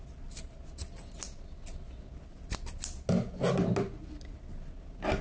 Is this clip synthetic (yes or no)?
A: no